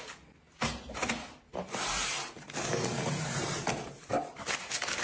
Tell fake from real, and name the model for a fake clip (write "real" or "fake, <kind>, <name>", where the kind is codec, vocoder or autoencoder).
real